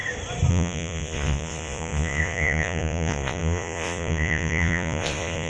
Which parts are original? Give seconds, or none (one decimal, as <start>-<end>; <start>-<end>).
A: 0.0-0.5